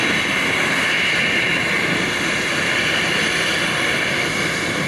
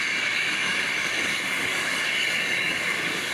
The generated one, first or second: second